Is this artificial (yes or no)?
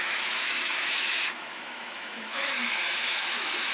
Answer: yes